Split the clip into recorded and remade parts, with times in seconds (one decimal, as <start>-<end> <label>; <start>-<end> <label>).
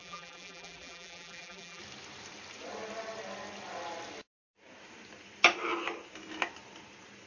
0.0-1.8 remade; 1.8-7.3 recorded